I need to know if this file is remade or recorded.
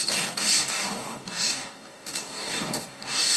remade